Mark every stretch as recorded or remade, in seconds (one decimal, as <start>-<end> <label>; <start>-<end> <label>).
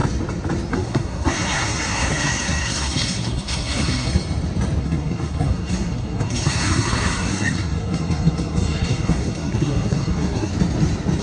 0.0-0.7 recorded; 0.7-4.1 remade; 4.1-4.8 recorded; 4.8-10.5 remade; 10.5-11.2 recorded